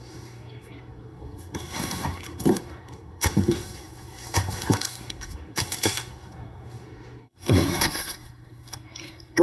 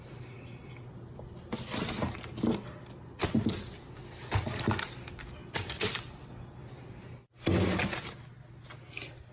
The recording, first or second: second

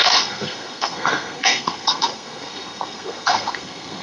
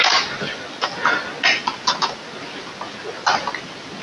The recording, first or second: second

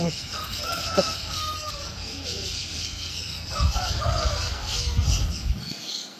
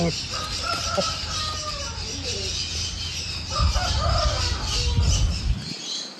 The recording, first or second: second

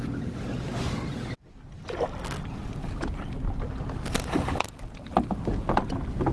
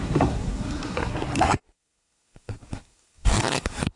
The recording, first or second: first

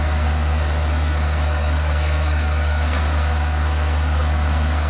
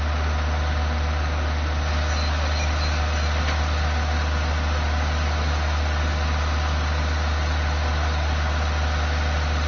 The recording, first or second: second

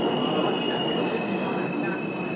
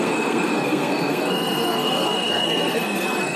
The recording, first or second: first